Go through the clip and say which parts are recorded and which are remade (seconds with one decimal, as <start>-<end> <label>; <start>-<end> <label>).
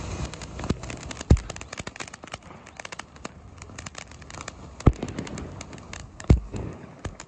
0.0-6.0 recorded; 6.0-7.3 remade